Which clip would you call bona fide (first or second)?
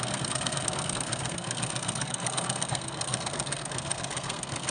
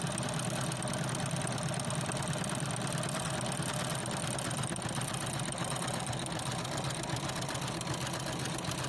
second